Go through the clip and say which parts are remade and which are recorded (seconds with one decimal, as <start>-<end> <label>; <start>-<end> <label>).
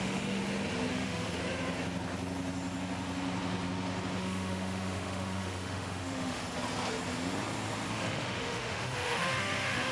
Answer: 0.0-0.4 remade; 0.4-0.9 recorded; 0.9-1.4 remade; 1.4-4.2 recorded; 4.2-6.4 remade; 6.4-7.9 recorded; 7.9-9.9 remade